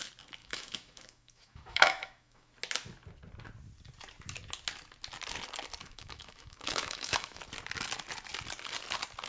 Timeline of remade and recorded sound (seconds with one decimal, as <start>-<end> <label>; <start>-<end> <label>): 0.0-0.4 recorded; 0.4-2.5 remade; 2.5-5.8 recorded; 5.8-7.4 remade; 7.4-9.3 recorded